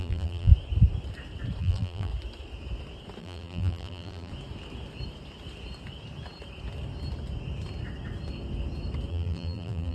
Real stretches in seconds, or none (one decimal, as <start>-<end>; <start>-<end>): 0.5-1.6; 2.1-3.2; 4.3-9.1